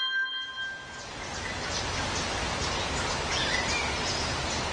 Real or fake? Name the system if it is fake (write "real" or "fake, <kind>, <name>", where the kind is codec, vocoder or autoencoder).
real